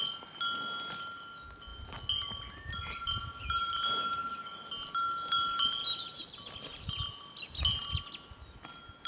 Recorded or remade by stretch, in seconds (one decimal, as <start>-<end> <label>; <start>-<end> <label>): 0.0-9.1 recorded

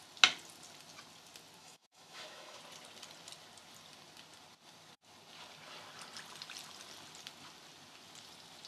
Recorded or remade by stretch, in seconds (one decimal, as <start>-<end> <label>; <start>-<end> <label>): 0.0-1.6 recorded; 1.6-2.6 remade; 2.6-8.7 recorded